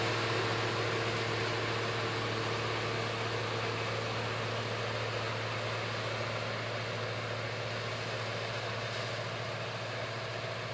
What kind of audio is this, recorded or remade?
recorded